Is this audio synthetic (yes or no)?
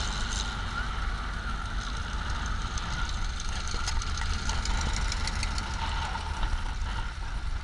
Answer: no